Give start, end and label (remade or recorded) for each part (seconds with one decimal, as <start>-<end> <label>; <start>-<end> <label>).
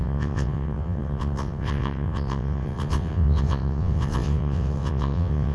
0.0-5.5 remade